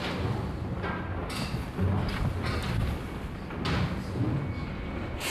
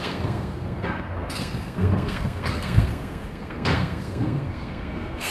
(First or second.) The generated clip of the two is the second